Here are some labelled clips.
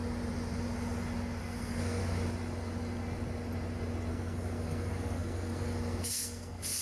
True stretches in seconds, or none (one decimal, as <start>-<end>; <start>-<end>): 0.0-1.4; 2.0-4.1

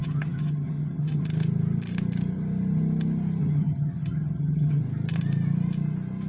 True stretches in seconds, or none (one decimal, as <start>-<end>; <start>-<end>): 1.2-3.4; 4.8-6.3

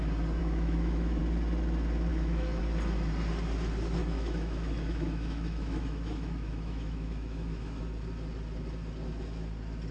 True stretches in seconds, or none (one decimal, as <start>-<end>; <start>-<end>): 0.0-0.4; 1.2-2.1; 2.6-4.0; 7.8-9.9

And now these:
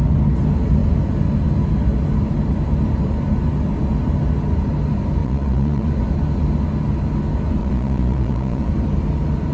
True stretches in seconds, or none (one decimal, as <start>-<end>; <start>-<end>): 0.0-5.2; 5.9-7.6; 8.7-9.5

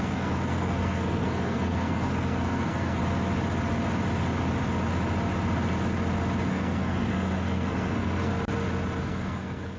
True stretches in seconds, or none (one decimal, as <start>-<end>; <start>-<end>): 3.0-6.5; 8.3-9.0

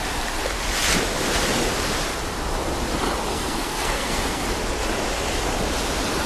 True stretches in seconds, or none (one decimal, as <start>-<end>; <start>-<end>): 0.0-3.3; 4.4-6.3

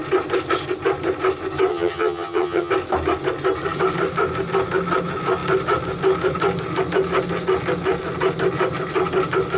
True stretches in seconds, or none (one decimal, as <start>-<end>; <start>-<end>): 0.0-1.7; 2.7-9.6

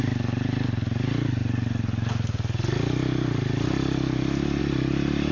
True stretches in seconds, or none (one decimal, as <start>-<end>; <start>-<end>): 0.0-5.3